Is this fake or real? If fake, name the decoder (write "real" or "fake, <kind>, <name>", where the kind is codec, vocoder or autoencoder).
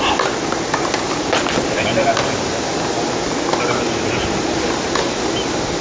real